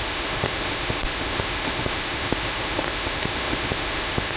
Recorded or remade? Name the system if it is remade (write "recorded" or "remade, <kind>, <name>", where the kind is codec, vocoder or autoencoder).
remade, autoencoder, DAC-VAE